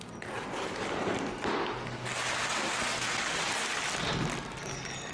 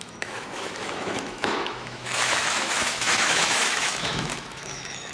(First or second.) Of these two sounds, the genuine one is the first